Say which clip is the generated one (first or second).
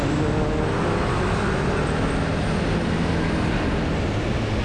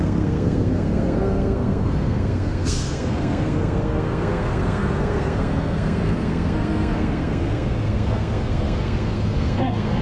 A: second